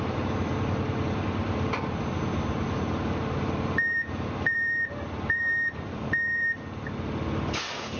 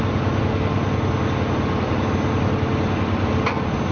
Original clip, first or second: second